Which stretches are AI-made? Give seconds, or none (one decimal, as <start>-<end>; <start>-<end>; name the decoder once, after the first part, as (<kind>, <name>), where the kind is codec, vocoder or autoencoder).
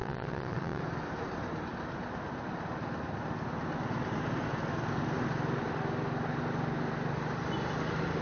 0.0-0.8 (vocoder, Vocos)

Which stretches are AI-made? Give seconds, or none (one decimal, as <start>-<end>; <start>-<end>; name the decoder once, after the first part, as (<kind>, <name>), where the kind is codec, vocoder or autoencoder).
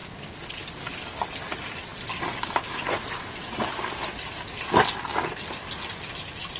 0.0-1.2 (codec, DAC)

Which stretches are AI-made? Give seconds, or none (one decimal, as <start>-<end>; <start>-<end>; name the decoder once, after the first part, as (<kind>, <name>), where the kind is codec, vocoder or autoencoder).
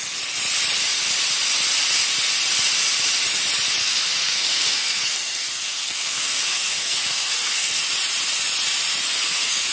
3.8-7.8 (codec, SNAC); 9.0-9.7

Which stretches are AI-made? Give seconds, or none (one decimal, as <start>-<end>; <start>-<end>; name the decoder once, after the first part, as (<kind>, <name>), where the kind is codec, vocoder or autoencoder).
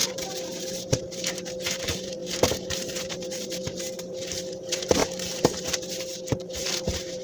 0.0-7.2 (vocoder, BigVGAN v2)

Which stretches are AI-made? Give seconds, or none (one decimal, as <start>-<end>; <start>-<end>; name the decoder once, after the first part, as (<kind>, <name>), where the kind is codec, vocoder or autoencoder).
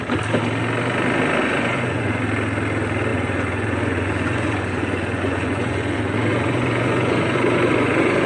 1.4-2.2 (vocoder, Vocos); 3.1-8.3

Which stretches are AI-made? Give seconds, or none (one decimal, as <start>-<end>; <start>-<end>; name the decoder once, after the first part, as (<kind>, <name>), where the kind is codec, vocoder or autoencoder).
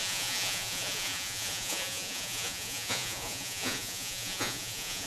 0.0-5.1 (vocoder, Vocos)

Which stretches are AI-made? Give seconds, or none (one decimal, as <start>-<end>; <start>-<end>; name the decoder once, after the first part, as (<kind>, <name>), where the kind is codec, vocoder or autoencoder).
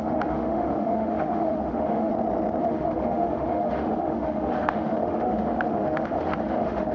0.0-2.1 (autoencoder, DAC-VAE); 2.6-6.9